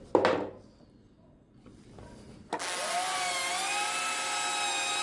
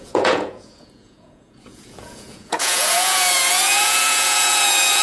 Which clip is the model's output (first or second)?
second